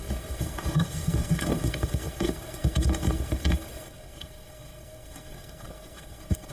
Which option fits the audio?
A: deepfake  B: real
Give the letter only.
A